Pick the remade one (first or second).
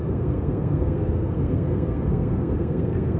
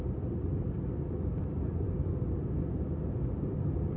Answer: first